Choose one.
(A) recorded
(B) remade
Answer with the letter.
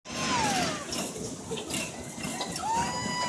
A